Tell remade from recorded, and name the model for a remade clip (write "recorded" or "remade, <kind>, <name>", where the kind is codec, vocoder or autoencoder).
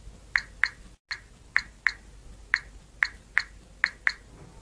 recorded